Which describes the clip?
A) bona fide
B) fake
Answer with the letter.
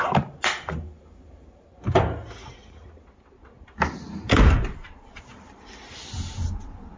A